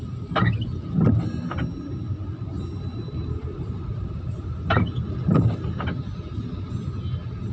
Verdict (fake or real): real